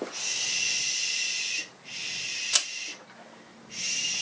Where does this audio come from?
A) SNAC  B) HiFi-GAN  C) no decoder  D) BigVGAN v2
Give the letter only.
C